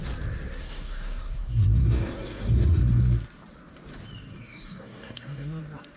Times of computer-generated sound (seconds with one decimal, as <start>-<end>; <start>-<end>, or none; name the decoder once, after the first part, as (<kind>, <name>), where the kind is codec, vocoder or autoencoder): 0.6-3.0 (codec, SNAC); 4.4-5.6